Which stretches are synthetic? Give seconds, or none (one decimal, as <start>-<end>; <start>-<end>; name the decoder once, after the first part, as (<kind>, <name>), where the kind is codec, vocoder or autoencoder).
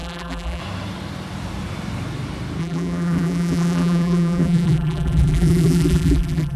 0.0-0.6 (vocoder, BigVGAN v2); 2.6-6.6